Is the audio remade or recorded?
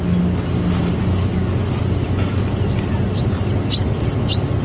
recorded